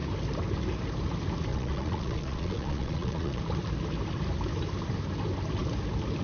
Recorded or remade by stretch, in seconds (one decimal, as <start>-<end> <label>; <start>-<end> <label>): 0.0-1.5 recorded; 1.5-3.4 remade; 3.4-6.2 recorded